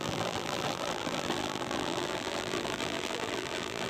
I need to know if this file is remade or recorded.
remade